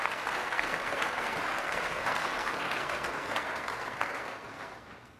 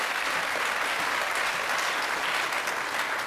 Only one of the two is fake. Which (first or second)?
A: first